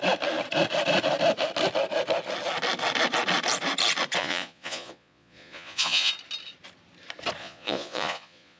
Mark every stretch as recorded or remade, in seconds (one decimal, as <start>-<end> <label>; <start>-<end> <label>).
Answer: 0.0-4.2 recorded; 4.2-6.1 remade; 6.1-7.4 recorded; 7.4-8.6 remade